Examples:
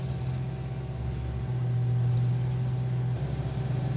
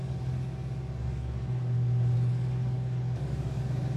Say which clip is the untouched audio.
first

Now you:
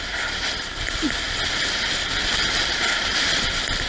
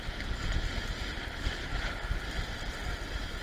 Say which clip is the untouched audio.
second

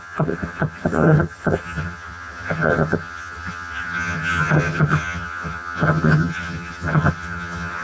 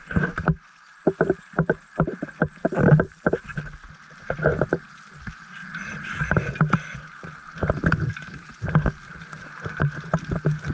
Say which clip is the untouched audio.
second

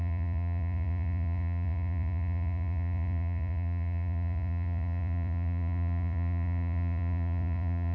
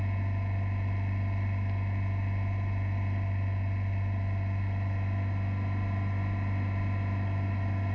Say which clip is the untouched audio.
second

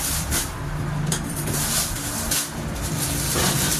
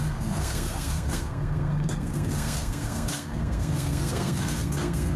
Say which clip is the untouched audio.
first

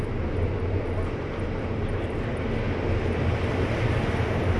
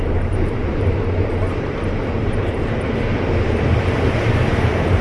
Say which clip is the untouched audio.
first